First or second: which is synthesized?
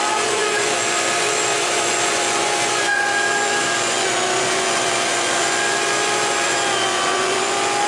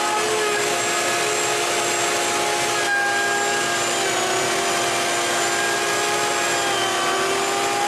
first